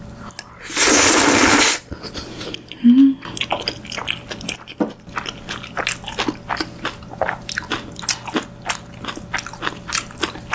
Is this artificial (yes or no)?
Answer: no